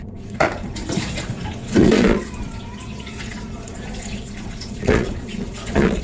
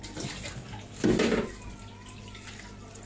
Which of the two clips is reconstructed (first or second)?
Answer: first